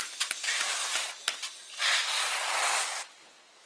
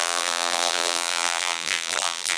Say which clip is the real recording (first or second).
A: first